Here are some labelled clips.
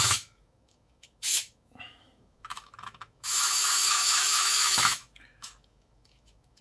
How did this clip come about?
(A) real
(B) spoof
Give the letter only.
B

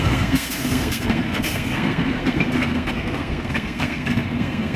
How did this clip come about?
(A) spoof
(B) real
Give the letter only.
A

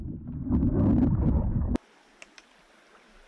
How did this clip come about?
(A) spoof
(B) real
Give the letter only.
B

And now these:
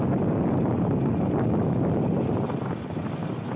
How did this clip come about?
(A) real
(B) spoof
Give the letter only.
A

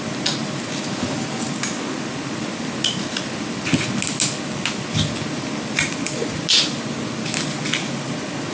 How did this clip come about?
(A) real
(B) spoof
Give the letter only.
A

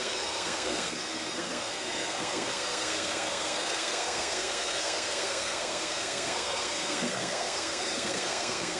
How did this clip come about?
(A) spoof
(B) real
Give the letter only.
A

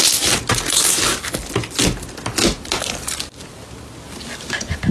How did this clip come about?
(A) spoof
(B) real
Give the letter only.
B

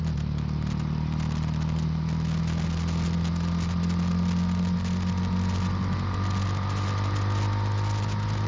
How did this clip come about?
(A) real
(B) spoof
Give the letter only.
A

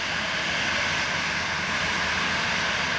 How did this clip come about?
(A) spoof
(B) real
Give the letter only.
B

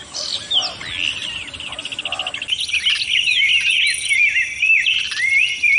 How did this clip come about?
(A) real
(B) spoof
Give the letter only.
A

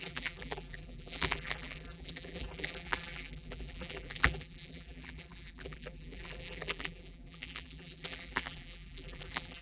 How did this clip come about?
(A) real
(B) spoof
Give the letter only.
B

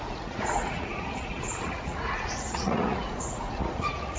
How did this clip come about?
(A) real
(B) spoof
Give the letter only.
B